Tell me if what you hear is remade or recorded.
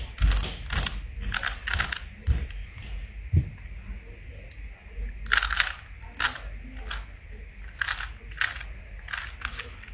recorded